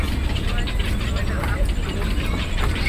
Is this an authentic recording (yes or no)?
yes